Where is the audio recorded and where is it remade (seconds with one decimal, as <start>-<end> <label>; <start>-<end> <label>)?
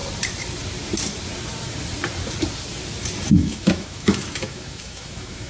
0.0-3.3 recorded; 3.3-5.5 remade